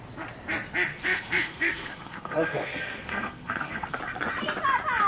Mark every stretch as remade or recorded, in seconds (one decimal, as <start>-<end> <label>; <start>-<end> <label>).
0.0-0.9 recorded; 0.9-4.0 remade; 4.0-5.1 recorded